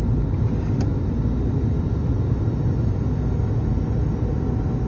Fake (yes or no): no